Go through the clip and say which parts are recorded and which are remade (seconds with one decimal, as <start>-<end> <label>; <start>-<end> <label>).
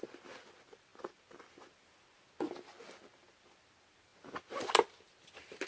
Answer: 0.0-5.7 recorded